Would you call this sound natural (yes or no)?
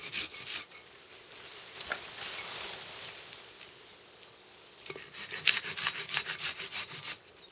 yes